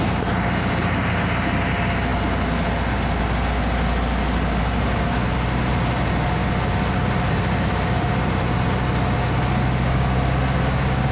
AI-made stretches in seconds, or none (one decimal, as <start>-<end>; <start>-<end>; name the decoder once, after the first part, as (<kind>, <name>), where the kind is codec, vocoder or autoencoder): none